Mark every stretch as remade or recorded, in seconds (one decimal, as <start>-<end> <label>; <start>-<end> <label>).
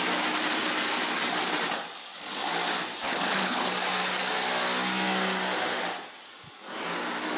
0.0-3.1 recorded; 3.1-3.7 remade; 3.7-7.4 recorded